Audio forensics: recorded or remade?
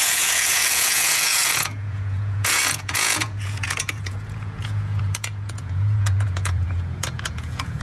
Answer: remade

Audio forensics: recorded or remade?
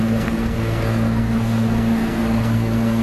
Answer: remade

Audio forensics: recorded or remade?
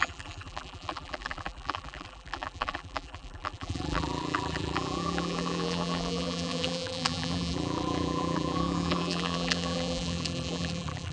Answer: remade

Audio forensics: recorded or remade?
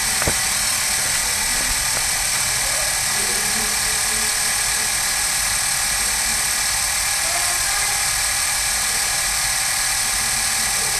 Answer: recorded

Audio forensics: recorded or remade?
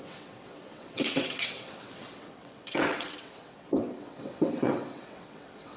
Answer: remade